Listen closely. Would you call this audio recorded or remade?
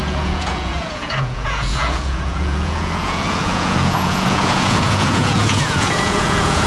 remade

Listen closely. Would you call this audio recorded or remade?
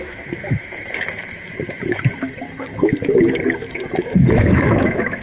remade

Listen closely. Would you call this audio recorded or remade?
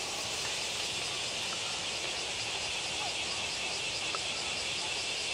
recorded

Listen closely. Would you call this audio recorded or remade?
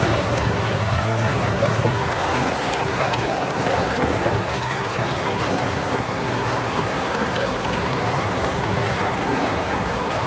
remade